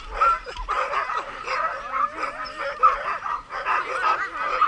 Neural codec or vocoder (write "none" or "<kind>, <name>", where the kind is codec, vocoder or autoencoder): none